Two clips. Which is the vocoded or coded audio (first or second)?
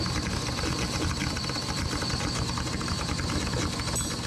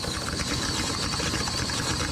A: second